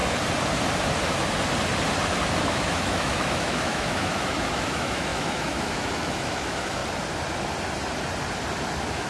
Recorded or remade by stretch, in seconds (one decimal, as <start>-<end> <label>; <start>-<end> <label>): 0.0-2.4 recorded; 2.4-6.8 remade; 6.8-9.1 recorded